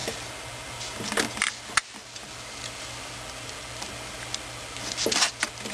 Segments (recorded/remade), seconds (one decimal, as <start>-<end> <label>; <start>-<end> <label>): 0.0-0.8 remade; 0.8-2.2 recorded; 2.2-4.9 remade; 4.9-5.7 recorded